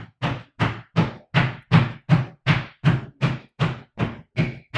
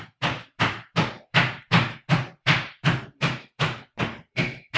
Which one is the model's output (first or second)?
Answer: second